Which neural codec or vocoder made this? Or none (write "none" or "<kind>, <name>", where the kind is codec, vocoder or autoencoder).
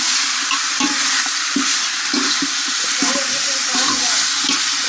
none